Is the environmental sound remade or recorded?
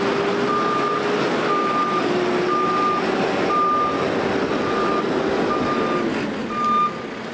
recorded